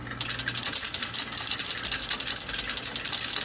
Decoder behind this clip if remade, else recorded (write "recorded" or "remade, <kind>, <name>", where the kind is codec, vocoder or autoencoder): recorded